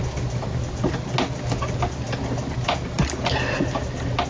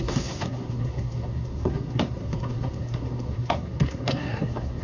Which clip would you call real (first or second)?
first